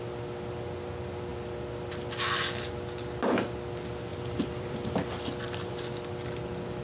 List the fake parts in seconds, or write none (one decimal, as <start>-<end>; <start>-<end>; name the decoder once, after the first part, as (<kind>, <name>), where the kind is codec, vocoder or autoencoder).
4.1-5.7 (vocoder, BigVGAN v2)